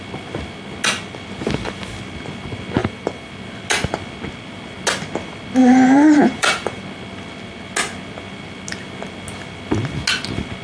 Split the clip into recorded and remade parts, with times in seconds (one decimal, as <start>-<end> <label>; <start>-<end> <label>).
0.0-2.8 recorded; 2.8-3.3 remade; 3.3-5.6 recorded; 5.6-6.8 remade; 6.8-10.6 recorded